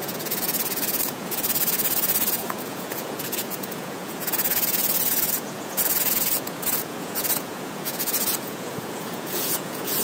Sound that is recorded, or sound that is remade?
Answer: remade